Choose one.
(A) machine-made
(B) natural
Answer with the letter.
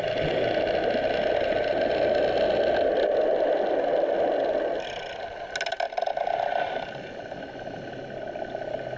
B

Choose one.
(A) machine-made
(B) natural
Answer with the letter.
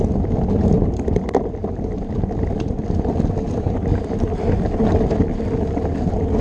B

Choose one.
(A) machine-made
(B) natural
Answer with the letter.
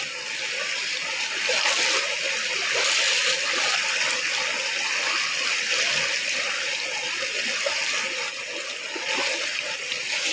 B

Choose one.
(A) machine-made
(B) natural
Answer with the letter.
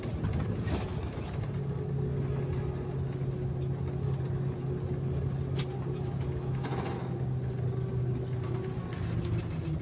B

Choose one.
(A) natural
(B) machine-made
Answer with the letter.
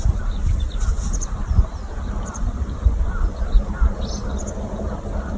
A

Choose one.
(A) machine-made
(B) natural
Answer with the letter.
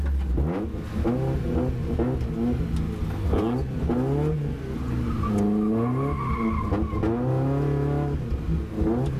B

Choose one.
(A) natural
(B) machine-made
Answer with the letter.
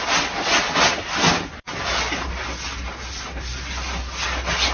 A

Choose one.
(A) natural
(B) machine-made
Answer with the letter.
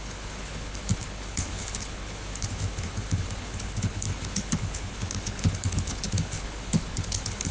B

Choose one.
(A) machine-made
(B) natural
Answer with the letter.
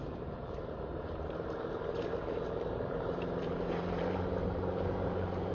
A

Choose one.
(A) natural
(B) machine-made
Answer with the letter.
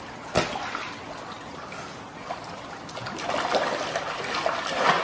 A